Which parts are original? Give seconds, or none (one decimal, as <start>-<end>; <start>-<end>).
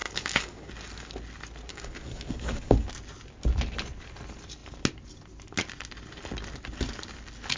0.7-1.7; 2.9-7.6